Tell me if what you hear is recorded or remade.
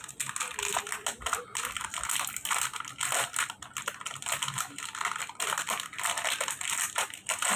recorded